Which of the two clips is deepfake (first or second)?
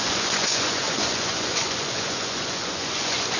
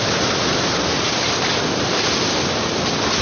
first